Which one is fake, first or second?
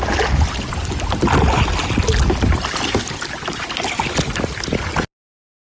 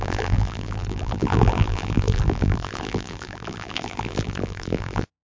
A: second